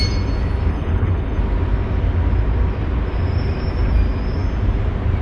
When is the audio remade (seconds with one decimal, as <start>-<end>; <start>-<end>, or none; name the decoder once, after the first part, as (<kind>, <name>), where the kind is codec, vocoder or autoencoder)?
0.7-1.4 (codec, HILCodec)